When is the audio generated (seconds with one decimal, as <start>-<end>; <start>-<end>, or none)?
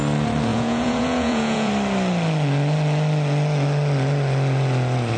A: 0.5-1.7